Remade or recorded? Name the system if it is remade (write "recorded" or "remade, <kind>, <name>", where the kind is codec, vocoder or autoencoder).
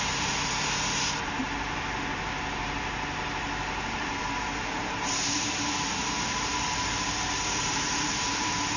remade, vocoder, BigVGAN v2